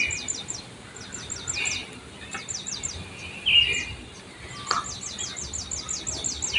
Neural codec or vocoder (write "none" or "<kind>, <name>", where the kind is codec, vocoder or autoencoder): none